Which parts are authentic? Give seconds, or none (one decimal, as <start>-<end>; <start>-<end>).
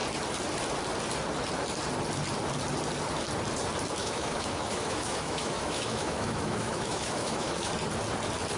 0.0-4.0; 7.7-8.6